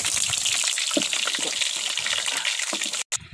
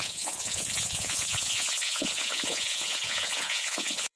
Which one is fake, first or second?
second